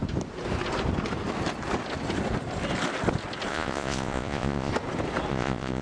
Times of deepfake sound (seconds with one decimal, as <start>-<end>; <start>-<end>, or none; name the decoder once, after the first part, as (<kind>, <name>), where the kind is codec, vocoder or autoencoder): 3.5-4.7 (vocoder, Vocos); 5.3-5.8